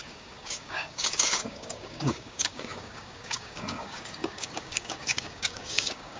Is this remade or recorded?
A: remade